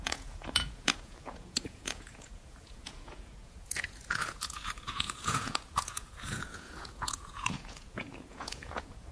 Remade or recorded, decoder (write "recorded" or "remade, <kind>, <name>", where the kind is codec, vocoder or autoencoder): remade, vocoder, Vocos